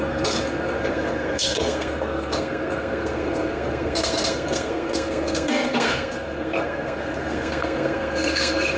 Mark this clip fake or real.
fake